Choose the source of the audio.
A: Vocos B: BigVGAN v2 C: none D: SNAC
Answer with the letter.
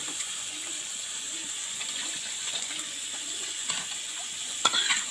A